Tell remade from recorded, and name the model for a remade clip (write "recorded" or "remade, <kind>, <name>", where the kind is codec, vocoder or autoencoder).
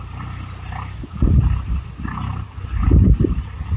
recorded